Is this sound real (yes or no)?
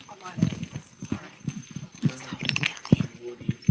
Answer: no